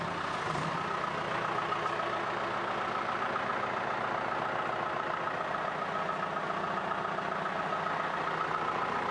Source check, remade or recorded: recorded